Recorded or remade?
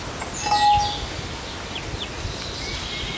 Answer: recorded